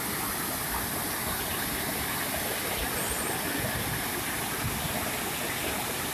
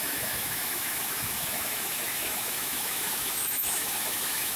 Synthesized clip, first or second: second